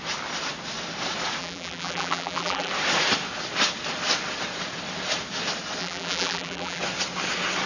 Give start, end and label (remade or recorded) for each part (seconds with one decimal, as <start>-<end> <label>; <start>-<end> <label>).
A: 0.0-1.4 recorded; 1.4-2.7 remade; 2.7-5.8 recorded; 5.8-6.8 remade; 6.8-7.7 recorded